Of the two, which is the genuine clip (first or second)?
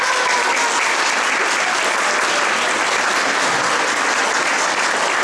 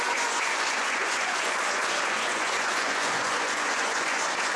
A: first